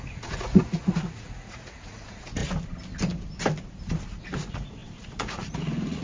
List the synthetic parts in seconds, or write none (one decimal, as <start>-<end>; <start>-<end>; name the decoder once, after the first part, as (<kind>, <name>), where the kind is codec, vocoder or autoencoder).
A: 0.0-2.4 (vocoder, Vocos); 4.2-6.0